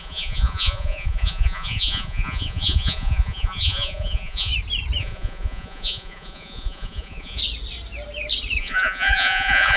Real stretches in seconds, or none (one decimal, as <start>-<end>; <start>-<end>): 4.5-5.0; 7.4-8.6